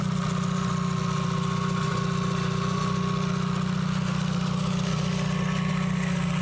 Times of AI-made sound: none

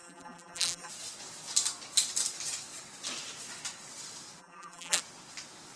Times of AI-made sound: 0.0-0.9 (vocoder, BigVGAN v2); 4.4-5.0

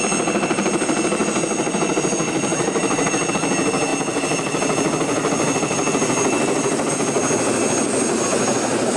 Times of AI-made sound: 2.5-3.3 (vocoder, BigVGAN v2)

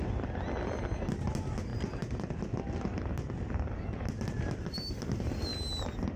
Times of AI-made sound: none

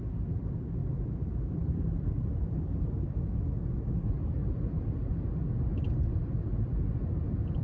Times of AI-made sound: 0.8-3.8 (vocoder, BigVGAN v2); 4.4-5.1

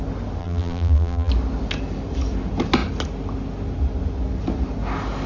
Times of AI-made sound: 0.4-1.3 (vocoder, BigVGAN v2)

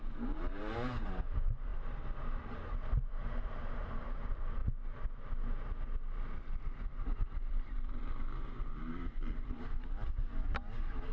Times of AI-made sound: 0.0-4.6 (vocoder, BigVGAN v2); 6.5-11.1